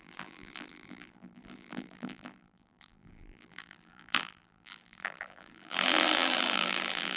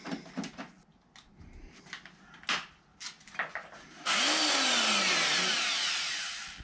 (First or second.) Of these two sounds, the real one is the second